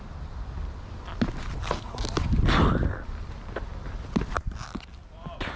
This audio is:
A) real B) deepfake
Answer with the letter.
A